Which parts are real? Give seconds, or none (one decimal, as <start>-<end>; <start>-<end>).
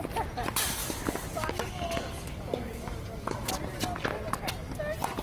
0.0-0.8; 3.5-5.2